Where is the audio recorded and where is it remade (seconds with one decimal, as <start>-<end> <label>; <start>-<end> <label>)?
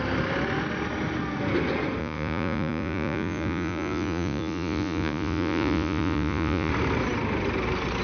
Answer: 0.0-2.0 recorded; 2.0-6.7 remade; 6.7-8.0 recorded